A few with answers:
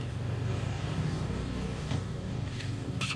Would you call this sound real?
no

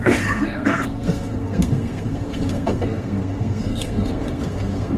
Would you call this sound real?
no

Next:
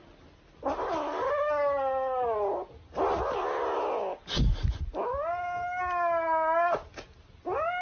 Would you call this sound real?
yes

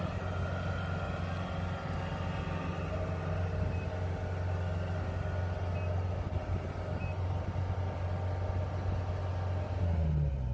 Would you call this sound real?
yes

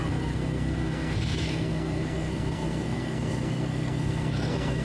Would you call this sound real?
no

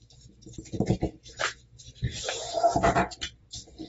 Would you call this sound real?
no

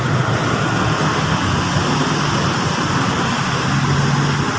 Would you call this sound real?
yes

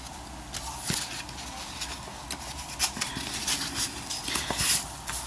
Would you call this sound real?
yes